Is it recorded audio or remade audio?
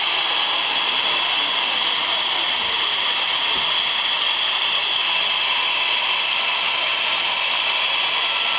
recorded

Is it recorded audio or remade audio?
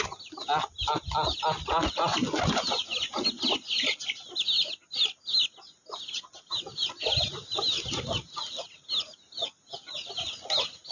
recorded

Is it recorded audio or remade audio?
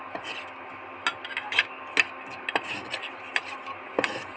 recorded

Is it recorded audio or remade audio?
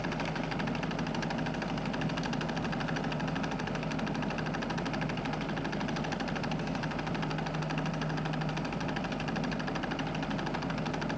recorded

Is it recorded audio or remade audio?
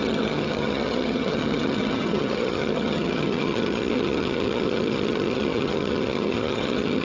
remade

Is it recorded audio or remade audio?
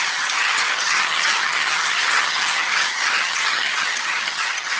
remade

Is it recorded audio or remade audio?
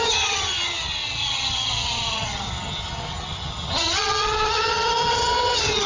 remade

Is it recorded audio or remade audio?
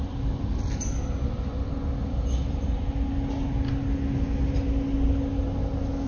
recorded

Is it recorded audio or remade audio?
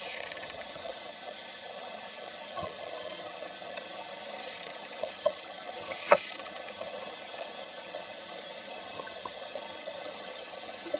remade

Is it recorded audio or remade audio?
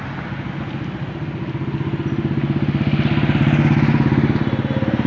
recorded